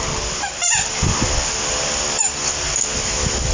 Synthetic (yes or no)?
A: no